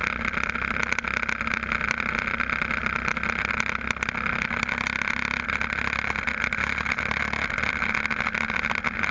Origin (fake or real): real